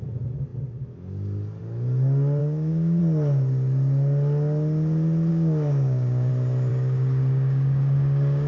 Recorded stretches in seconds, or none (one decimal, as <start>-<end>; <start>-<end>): 0.0-2.4; 3.0-5.3; 6.3-6.7

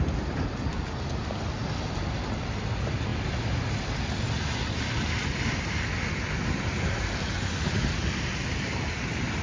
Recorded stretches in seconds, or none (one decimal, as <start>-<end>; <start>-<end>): 0.0-9.4

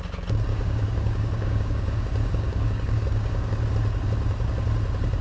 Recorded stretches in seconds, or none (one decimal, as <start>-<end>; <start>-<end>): 0.0-0.5; 3.6-5.2

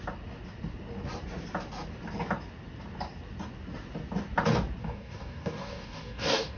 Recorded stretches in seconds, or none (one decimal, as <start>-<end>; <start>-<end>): 0.0-4.8

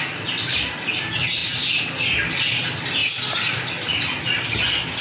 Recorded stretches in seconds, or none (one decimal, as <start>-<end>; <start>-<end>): 0.0-5.0

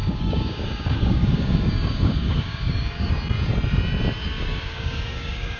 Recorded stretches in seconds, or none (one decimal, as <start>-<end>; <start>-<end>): 3.1-4.2

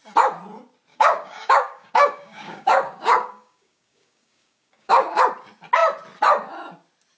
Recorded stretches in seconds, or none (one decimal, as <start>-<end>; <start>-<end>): 0.0-0.9; 5.2-7.2